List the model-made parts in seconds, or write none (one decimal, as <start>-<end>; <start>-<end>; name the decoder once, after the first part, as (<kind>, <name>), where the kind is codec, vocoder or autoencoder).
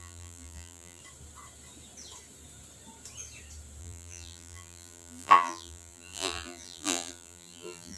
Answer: 0.0-1.0 (vocoder, BigVGAN v2); 3.8-8.0